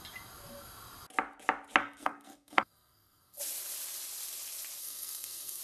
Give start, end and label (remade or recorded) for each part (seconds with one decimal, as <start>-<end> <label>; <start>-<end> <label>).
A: 0.0-1.8 recorded; 1.8-3.4 remade; 3.4-4.8 recorded; 4.8-5.6 remade